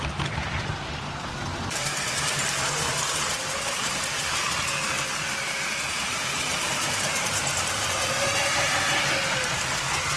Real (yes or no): no